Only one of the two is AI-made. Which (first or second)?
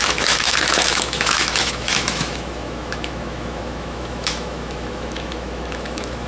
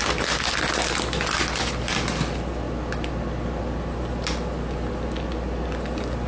first